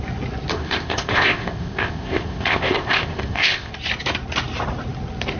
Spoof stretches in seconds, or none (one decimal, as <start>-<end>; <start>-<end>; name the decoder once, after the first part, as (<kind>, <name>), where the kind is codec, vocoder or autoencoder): 0.5-3.7 (codec, ZipCodec)